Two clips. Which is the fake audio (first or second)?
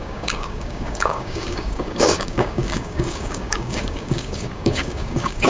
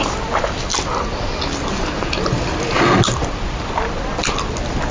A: first